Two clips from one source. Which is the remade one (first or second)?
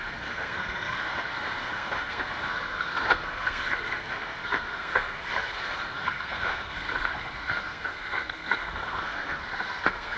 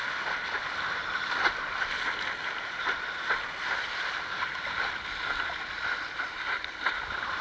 first